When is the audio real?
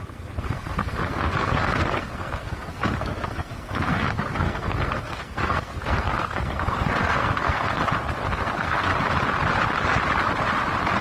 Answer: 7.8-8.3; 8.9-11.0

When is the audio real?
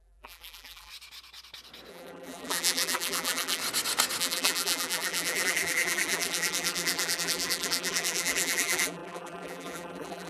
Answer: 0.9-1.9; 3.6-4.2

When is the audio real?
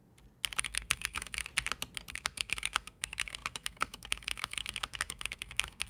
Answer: 0.0-0.6; 1.5-2.1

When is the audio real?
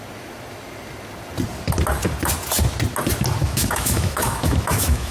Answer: 0.0-3.4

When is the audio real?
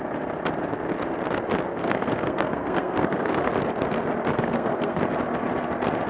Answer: 0.0-1.8; 3.5-4.3; 5.0-6.1